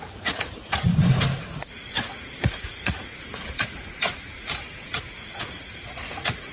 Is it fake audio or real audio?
fake